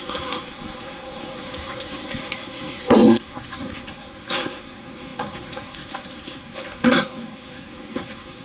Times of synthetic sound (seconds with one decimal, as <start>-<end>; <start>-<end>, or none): 0.0-8.4